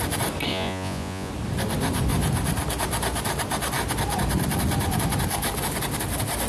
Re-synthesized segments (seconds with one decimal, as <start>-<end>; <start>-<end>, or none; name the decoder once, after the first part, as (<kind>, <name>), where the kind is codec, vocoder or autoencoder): 0.5-1.3 (vocoder, Vocos)